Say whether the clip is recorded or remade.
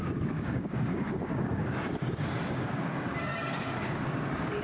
remade